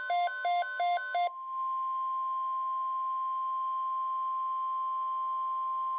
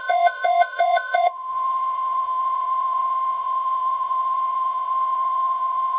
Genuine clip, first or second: first